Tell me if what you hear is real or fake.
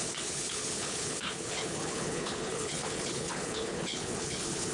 fake